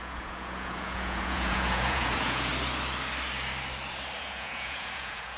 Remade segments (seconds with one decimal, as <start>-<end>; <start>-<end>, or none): 0.0-2.5; 4.2-5.4